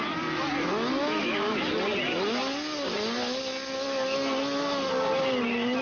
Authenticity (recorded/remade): recorded